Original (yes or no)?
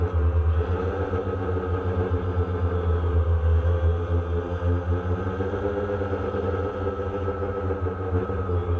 yes